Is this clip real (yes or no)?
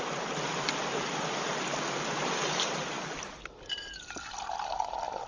yes